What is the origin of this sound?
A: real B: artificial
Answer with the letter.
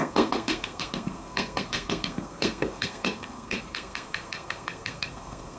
B